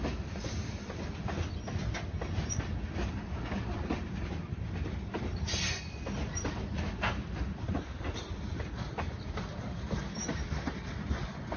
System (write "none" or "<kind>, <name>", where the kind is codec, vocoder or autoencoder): none